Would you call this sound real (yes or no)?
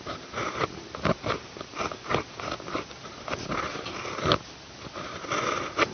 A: yes